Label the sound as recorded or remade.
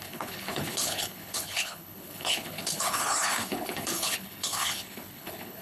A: remade